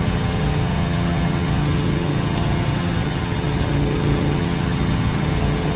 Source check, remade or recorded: remade